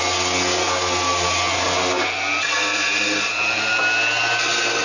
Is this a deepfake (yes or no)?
no